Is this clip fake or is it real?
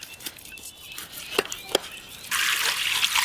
real